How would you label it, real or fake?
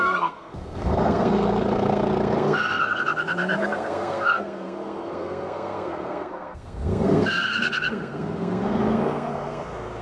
fake